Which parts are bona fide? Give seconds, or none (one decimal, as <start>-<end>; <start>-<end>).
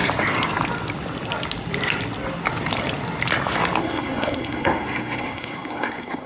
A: 0.0-3.8